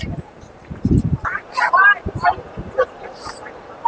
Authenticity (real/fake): fake